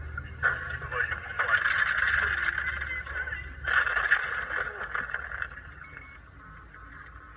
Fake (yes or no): no